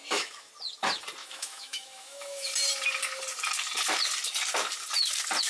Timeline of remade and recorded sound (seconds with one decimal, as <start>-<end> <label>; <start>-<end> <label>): 0.0-0.5 remade; 0.5-1.2 recorded; 1.2-2.5 remade; 2.5-5.5 recorded